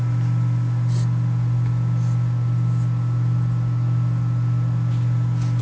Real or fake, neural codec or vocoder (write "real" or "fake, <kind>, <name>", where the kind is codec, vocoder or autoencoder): real